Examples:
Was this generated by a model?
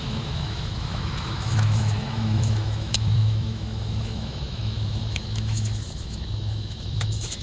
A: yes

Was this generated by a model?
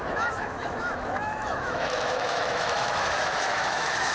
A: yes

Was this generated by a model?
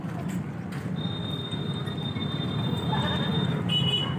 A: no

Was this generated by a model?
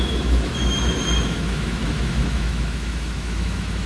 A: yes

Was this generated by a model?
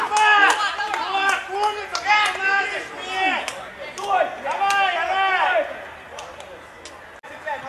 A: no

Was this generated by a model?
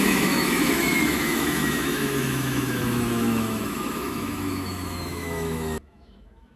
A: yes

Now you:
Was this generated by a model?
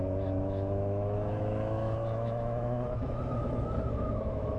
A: yes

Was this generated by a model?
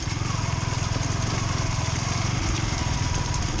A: no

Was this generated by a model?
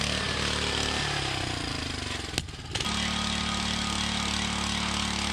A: no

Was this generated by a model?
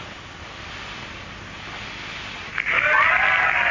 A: no